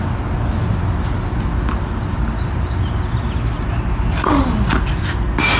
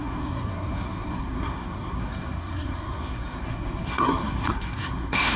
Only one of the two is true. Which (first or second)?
first